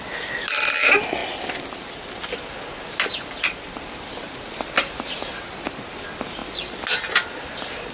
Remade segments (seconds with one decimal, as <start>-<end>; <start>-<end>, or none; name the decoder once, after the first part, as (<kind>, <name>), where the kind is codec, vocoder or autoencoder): 1.2-5.7 (vocoder, BigVGAN v2)